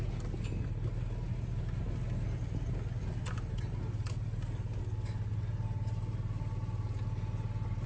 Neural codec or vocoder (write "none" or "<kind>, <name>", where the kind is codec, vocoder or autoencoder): none